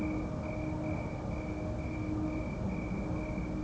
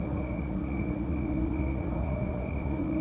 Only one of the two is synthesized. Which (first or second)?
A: second